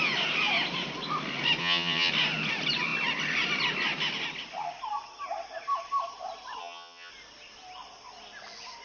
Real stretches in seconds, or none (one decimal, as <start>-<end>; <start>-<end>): 0.0-1.6; 2.1-6.6; 7.1-8.8